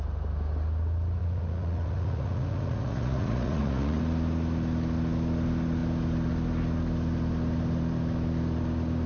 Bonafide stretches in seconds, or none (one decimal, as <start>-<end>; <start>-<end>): 0.0-1.2; 4.0-9.1